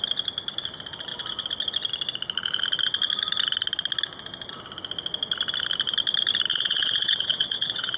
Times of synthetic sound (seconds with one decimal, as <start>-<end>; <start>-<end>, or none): 6.5-8.0